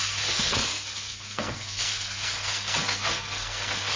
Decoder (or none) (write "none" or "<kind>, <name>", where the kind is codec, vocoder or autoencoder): codec, SNAC